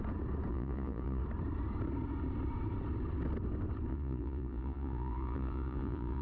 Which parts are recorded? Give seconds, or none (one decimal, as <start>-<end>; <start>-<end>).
0.0-0.5; 1.2-3.9